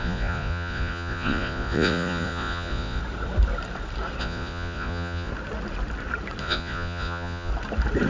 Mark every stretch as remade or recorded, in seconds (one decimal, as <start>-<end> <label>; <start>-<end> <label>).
0.0-3.0 remade; 3.0-4.2 recorded; 4.2-5.3 remade; 5.3-6.4 recorded; 6.4-7.5 remade; 7.5-8.1 recorded